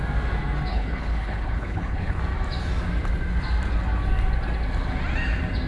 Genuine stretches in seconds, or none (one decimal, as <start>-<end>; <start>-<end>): 0.0-0.7; 2.2-5.7